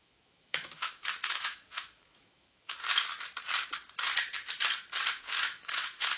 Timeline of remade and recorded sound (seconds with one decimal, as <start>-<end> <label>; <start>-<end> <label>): 0.0-2.8 remade; 2.8-5.1 recorded; 5.1-6.2 remade